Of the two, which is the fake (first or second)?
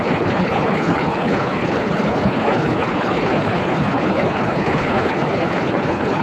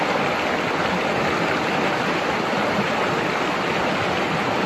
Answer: first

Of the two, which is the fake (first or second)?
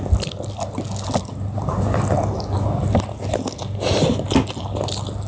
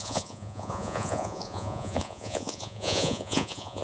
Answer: second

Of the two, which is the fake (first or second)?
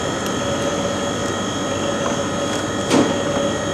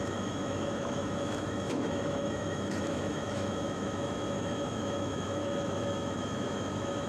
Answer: second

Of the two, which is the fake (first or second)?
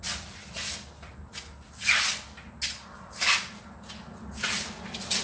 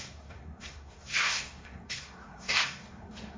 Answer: second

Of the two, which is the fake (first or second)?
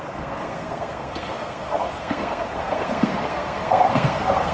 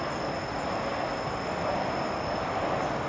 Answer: first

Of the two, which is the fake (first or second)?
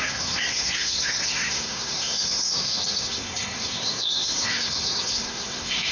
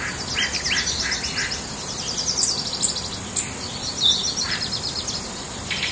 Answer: first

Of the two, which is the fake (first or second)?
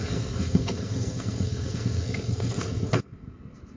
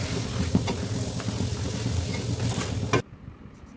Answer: first